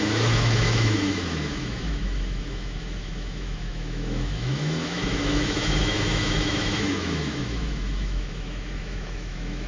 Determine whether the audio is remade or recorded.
remade